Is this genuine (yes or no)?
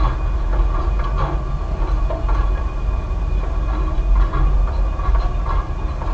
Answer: yes